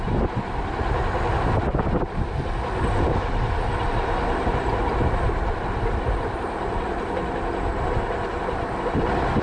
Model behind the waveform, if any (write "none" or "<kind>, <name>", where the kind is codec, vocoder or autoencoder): none